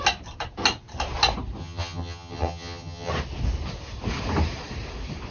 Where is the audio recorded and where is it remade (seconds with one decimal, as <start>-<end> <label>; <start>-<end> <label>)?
0.0-1.6 recorded; 1.6-3.1 remade; 3.1-5.3 recorded

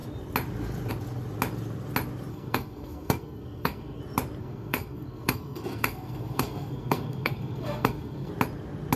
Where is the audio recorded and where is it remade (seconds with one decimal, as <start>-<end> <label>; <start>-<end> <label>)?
0.0-2.3 recorded; 2.3-4.0 remade; 4.0-4.4 recorded; 4.4-8.3 remade; 8.3-9.0 recorded

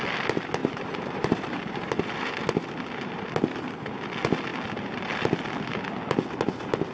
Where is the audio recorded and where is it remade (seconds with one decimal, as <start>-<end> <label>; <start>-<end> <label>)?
0.0-0.6 recorded; 0.6-2.3 remade; 2.3-6.9 recorded

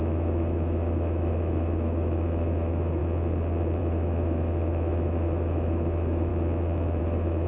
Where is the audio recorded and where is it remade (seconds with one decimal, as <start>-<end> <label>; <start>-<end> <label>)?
0.0-3.0 remade; 3.0-3.8 recorded; 3.8-6.3 remade; 6.3-7.0 recorded; 7.0-7.5 remade

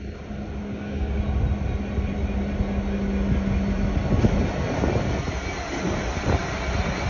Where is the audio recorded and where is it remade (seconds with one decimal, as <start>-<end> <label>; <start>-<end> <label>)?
0.0-0.7 recorded; 0.7-1.2 remade; 1.2-7.1 recorded

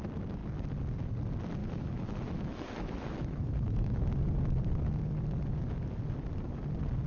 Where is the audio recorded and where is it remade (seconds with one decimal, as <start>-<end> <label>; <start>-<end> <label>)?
0.0-1.6 recorded; 1.6-4.2 remade; 4.2-7.1 recorded

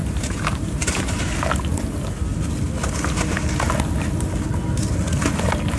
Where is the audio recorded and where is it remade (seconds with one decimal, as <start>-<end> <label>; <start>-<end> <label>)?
0.0-1.5 remade; 1.5-5.8 recorded